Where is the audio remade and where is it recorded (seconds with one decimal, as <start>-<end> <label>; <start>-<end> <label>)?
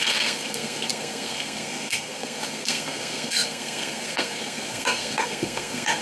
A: 0.0-6.0 remade